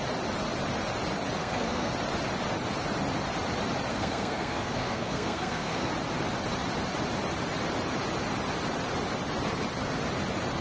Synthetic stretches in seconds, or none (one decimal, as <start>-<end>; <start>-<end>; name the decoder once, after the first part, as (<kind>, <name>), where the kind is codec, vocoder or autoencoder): 1.4-1.9 (codec, SNAC); 3.9-5.9